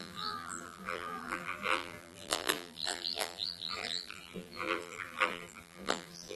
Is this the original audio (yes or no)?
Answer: no